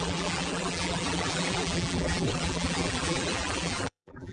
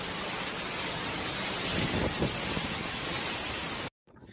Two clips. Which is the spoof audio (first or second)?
first